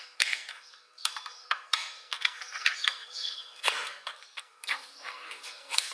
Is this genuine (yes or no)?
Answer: no